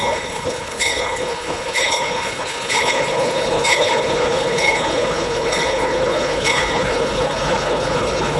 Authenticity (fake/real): fake